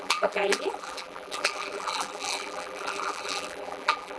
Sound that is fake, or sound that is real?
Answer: fake